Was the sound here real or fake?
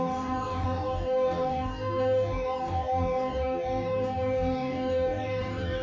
fake